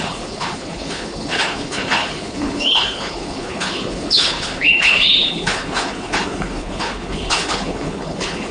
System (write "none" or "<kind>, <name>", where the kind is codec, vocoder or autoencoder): codec, HILCodec